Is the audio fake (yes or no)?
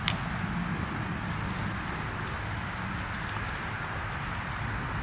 no